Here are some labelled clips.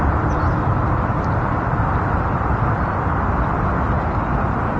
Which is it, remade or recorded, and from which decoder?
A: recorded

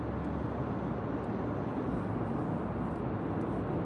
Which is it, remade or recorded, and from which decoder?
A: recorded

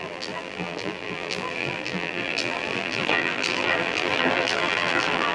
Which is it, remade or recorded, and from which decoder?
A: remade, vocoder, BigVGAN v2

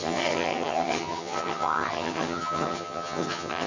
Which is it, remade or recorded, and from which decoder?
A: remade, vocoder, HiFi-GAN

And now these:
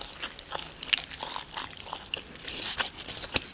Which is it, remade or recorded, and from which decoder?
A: recorded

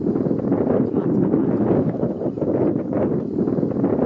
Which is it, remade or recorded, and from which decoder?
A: recorded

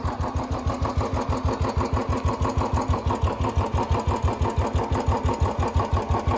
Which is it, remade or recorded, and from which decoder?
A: recorded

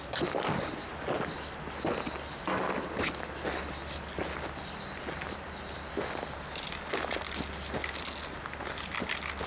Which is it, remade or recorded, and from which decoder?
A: recorded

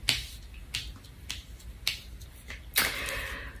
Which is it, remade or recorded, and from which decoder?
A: recorded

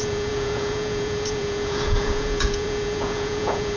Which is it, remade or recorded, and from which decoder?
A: remade, vocoder, Vocos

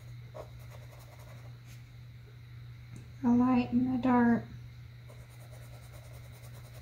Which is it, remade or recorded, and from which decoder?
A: recorded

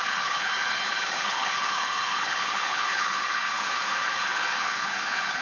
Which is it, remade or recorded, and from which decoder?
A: remade, codec, HILCodec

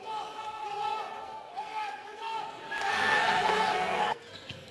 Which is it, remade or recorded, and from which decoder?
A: remade, codec, SNAC